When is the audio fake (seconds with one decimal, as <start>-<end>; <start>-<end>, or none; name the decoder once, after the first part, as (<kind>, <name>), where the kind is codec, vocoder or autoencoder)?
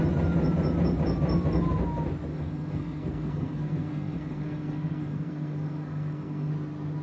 2.3-6.5 (codec, SNAC)